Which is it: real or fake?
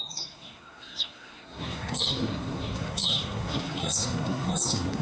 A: fake